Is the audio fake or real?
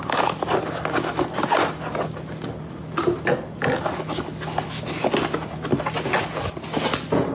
real